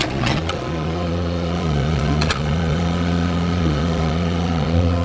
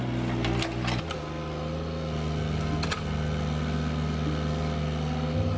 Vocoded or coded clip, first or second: first